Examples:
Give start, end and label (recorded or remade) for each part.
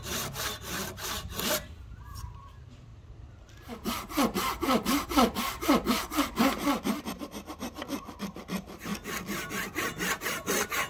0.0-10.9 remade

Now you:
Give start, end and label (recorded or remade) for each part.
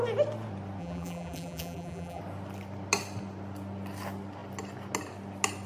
0.0-0.8 recorded; 0.8-2.2 remade; 2.2-5.7 recorded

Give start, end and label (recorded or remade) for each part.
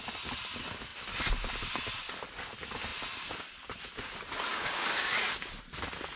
0.0-4.5 recorded; 4.5-5.2 remade; 5.2-6.2 recorded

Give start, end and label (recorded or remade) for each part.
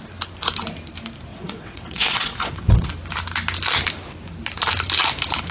0.0-1.3 recorded; 1.3-2.9 remade; 2.9-5.5 recorded